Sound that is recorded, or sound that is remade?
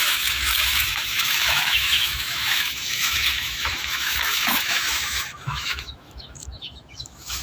remade